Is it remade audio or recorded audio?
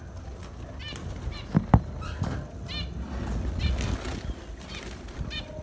recorded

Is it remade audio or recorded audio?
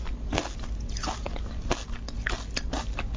recorded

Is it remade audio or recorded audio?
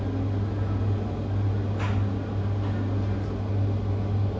recorded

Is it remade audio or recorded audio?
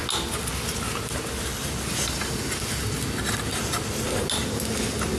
recorded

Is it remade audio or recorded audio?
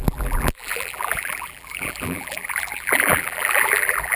remade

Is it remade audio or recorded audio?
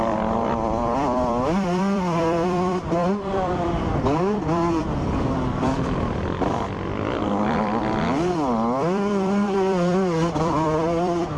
remade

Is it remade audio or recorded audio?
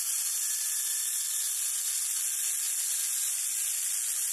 recorded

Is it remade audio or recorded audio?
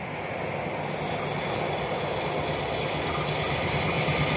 recorded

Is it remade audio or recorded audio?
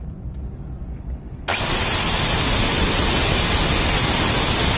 recorded